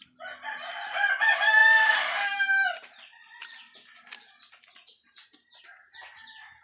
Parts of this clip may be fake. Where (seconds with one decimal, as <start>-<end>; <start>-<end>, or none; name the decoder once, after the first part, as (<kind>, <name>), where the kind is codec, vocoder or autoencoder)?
1.6-5.6 (vocoder, BigVGAN v2)